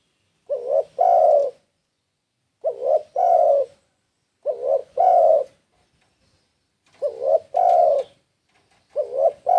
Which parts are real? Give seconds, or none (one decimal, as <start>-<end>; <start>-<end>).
0.0-1.4; 2.4-3.0; 4.3-4.8; 5.4-9.6